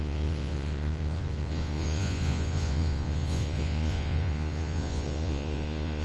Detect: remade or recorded remade